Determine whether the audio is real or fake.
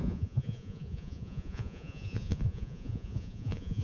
fake